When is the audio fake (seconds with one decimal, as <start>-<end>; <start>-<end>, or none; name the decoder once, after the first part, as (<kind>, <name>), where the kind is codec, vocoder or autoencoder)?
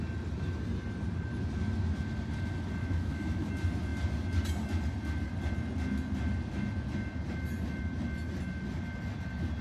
2.8-3.5 (autoencoder, DAC-VAE)